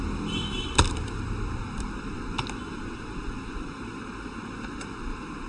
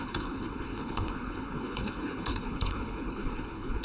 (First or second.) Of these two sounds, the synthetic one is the second